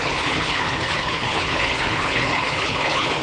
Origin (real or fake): fake